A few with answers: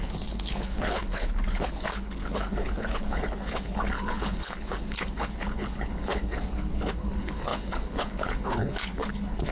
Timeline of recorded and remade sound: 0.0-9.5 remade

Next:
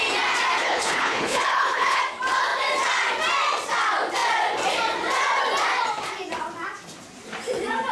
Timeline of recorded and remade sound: 0.0-0.6 recorded; 0.6-2.0 remade; 2.0-7.9 recorded

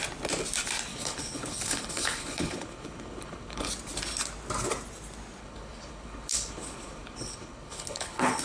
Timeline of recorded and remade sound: 0.0-0.9 recorded; 0.9-3.7 remade; 3.7-5.4 recorded; 5.4-8.4 remade

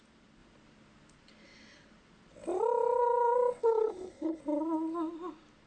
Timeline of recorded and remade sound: 0.0-3.6 recorded; 3.6-4.4 remade; 4.4-5.7 recorded